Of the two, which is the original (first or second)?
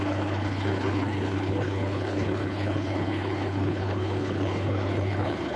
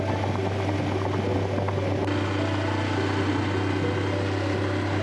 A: second